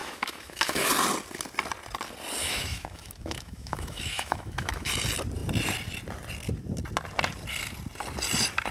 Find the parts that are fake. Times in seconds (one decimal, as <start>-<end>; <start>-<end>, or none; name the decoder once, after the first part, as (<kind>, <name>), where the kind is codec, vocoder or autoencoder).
0.0-0.9 (autoencoder, DAC-VAE); 2.4-4.9